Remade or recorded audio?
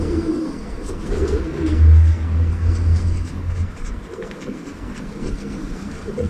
remade